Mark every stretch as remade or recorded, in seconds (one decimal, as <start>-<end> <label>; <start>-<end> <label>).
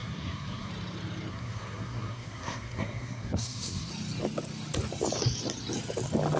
0.0-0.7 remade; 0.7-1.3 recorded; 1.3-3.9 remade; 3.9-6.4 recorded